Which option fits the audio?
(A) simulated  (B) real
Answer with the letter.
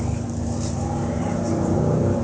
B